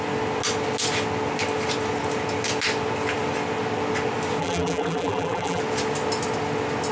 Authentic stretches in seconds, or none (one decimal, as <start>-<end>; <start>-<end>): 0.0-4.4; 5.6-6.9